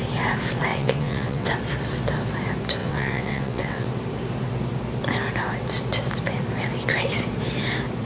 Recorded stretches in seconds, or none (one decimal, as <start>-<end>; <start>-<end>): 0.0-0.7; 1.5-2.8; 3.9-8.0